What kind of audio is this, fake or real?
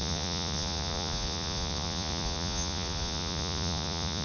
fake